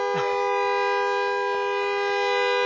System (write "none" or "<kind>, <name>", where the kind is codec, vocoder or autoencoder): none